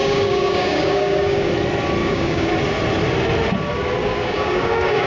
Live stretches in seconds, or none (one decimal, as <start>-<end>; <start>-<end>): 1.5-2.0; 2.5-4.0